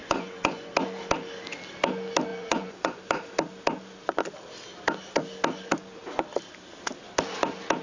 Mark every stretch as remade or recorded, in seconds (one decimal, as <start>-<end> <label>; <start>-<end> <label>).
0.0-0.7 remade; 0.7-2.3 recorded; 2.3-3.0 remade; 3.0-7.8 recorded